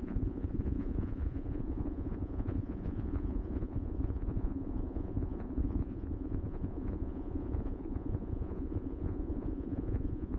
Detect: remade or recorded remade